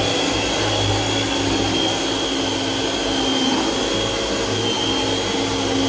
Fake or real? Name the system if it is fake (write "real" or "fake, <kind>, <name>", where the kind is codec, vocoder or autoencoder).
real